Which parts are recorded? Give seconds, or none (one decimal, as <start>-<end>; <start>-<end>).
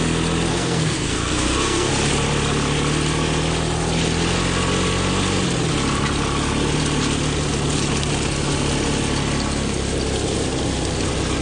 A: 0.0-0.5; 1.9-11.4